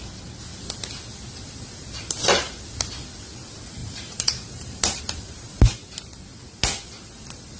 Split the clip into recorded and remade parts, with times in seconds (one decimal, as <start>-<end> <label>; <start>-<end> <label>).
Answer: 0.0-3.8 recorded; 3.8-5.0 remade; 5.0-7.6 recorded